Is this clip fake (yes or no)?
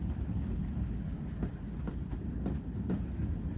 no